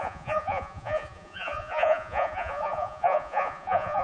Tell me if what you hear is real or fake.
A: fake